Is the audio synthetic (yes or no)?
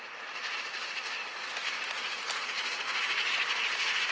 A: no